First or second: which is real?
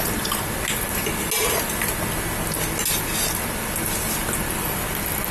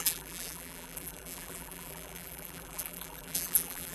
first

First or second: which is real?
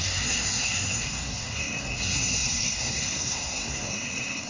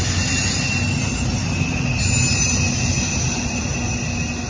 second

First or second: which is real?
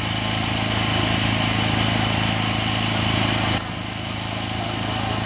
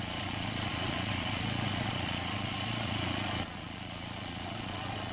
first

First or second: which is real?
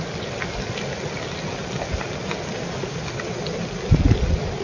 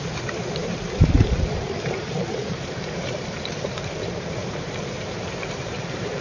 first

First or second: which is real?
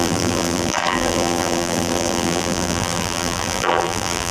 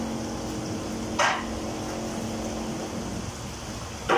second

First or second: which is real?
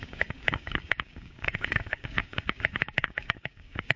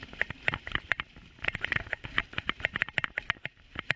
second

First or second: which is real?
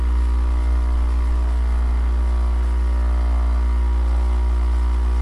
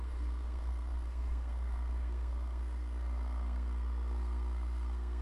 first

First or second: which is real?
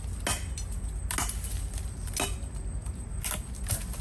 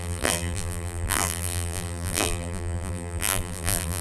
first